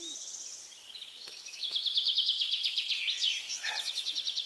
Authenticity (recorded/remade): remade